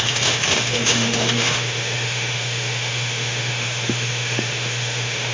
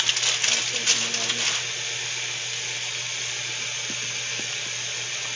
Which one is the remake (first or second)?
first